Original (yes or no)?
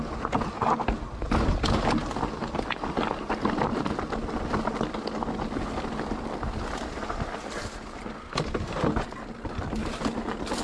yes